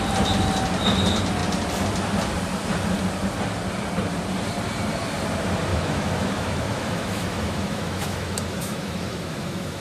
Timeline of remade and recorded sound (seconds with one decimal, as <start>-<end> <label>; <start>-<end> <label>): 0.0-5.7 recorded; 5.7-9.8 remade